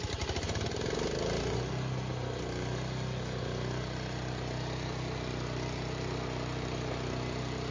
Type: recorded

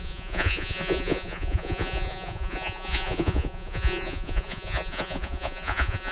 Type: remade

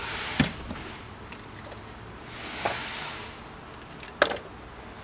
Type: recorded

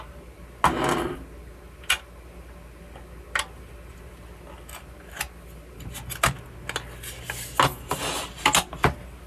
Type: recorded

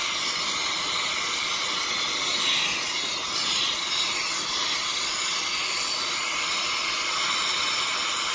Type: recorded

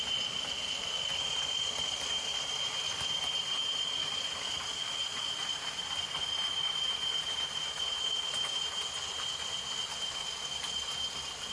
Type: recorded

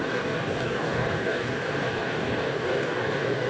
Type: remade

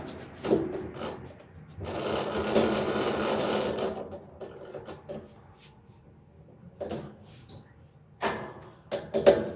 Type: recorded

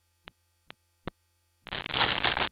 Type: recorded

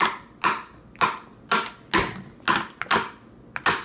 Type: recorded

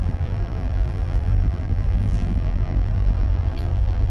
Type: remade